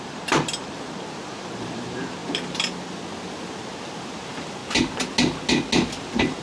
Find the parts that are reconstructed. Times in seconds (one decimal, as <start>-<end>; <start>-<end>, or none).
0.0-2.2; 4.1-4.6; 6.0-6.4